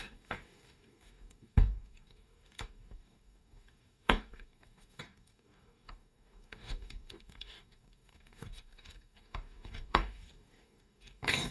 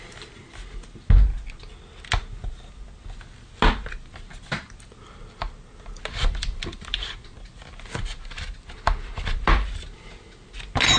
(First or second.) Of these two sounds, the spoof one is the first